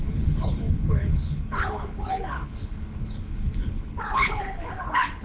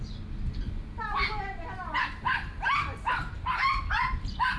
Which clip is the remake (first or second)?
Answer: first